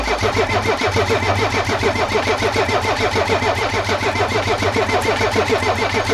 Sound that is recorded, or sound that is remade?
recorded